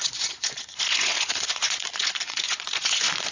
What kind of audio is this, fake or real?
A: fake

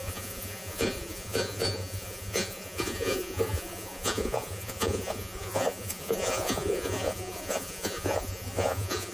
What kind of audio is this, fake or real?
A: fake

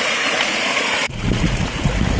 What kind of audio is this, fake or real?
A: fake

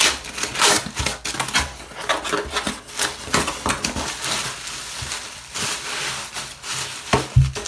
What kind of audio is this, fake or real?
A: real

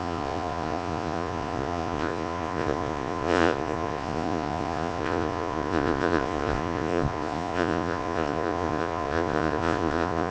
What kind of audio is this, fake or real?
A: fake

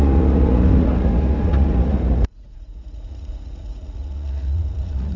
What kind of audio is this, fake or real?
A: fake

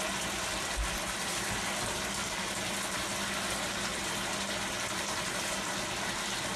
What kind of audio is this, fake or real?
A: real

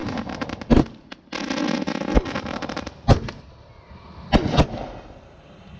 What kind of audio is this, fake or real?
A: real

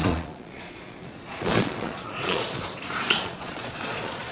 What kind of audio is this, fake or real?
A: fake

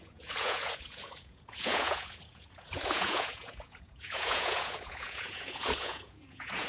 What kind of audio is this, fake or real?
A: fake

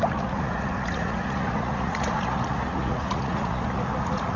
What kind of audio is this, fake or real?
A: fake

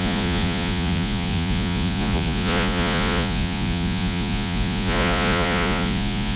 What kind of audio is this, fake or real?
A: fake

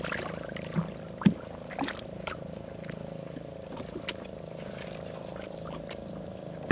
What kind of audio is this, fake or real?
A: real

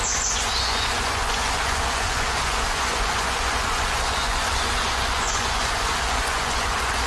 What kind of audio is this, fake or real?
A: fake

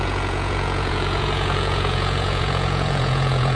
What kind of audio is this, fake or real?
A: fake